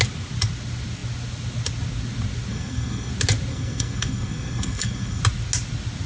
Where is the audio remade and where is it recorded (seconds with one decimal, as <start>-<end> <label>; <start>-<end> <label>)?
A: 0.0-2.5 recorded; 2.5-3.1 remade; 3.1-3.5 recorded; 3.5-5.2 remade; 5.2-6.1 recorded